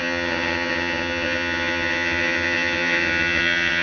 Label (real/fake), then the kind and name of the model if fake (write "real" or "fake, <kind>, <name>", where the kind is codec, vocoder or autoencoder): fake, vocoder, HiFi-GAN